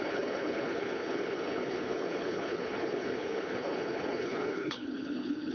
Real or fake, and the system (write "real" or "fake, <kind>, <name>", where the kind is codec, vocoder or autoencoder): fake, codec, HILCodec